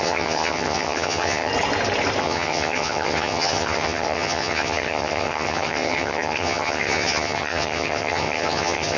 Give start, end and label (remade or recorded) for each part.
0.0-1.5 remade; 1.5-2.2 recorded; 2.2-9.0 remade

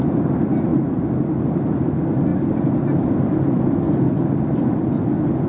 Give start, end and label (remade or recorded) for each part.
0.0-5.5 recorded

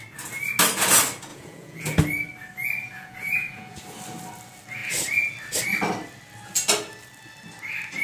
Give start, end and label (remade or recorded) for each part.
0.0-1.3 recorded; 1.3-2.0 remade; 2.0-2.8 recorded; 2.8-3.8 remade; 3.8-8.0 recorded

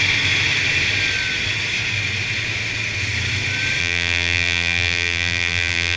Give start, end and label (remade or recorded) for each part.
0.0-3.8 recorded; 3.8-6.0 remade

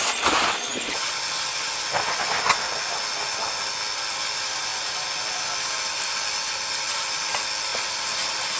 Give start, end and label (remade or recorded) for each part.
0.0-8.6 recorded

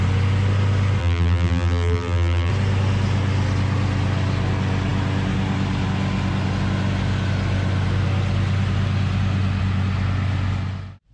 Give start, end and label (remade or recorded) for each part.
0.0-1.0 recorded; 1.0-2.5 remade; 2.5-11.1 recorded

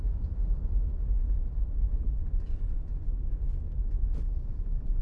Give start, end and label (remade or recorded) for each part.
0.0-5.0 recorded